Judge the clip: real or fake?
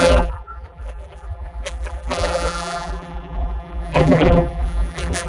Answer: fake